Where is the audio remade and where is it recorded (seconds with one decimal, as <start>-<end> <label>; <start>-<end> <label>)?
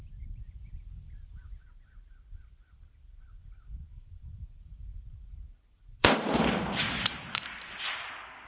0.0-2.1 remade; 2.1-4.7 recorded; 4.7-5.3 remade; 5.3-6.0 recorded; 6.0-6.6 remade; 6.6-8.5 recorded